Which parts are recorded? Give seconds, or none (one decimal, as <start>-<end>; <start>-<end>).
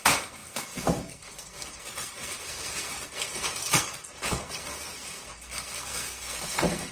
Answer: none